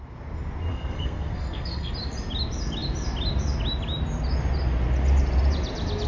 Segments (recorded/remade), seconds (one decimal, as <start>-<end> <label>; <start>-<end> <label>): 0.0-0.7 recorded; 0.7-1.9 remade; 1.9-6.1 recorded